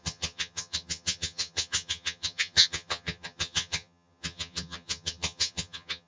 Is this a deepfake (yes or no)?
yes